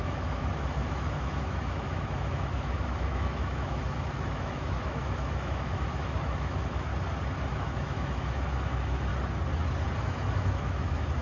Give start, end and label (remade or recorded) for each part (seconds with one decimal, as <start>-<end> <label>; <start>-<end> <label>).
0.0-6.9 remade; 6.9-7.5 recorded; 7.5-9.1 remade; 9.1-10.0 recorded; 10.0-11.2 remade